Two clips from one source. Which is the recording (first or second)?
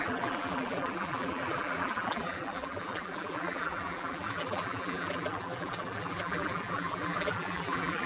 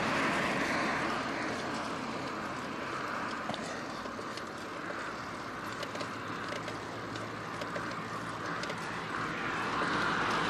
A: second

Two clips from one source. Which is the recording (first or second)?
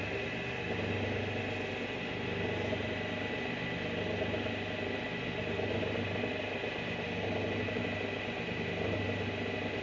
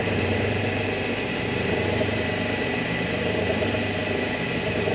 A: first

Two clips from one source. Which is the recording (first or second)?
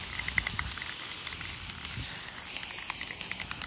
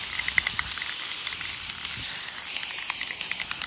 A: first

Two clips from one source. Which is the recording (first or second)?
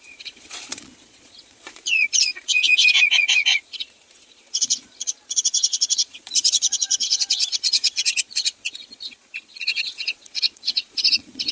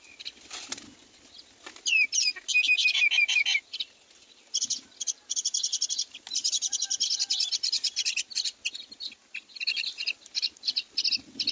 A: second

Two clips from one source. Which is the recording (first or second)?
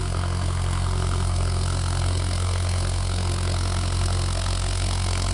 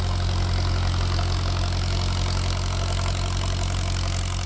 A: second